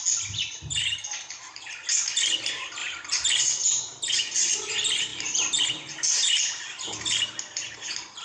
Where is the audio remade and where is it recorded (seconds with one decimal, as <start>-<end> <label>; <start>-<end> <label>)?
0.0-8.2 recorded